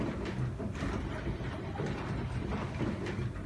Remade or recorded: recorded